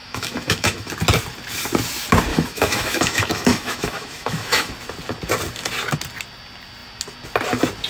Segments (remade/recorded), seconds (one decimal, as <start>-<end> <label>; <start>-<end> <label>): 0.0-0.9 remade; 0.9-2.3 recorded; 2.3-4.7 remade; 4.7-7.9 recorded